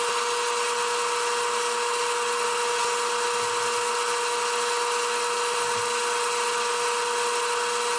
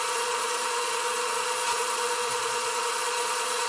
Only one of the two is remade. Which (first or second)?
second